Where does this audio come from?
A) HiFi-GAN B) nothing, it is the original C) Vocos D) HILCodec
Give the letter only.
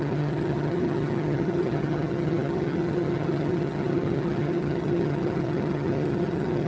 A